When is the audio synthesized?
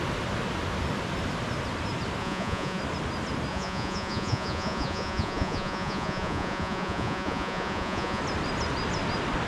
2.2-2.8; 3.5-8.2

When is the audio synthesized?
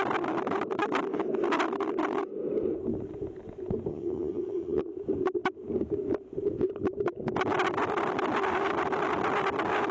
3.9-4.8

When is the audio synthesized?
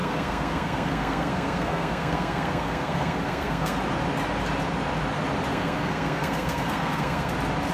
0.0-3.8; 5.5-7.3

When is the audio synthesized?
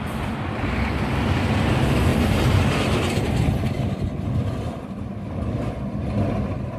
none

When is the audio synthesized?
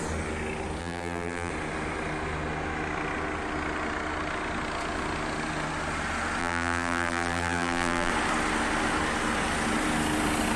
0.8-1.5; 6.4-8.1